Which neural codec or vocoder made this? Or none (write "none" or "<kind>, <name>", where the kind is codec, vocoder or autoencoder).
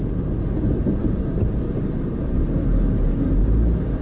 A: none